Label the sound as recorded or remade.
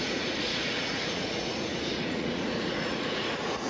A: remade